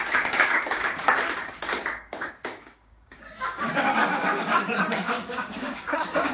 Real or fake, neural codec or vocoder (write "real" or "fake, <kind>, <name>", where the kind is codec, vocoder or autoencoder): fake, codec, DAC